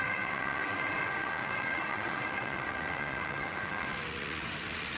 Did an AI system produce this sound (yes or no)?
yes